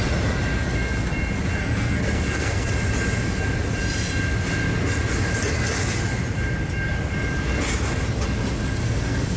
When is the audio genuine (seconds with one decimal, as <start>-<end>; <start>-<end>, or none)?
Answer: 0.0-1.6; 2.7-8.8